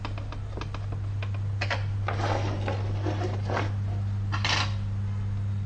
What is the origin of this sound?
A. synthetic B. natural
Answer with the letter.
B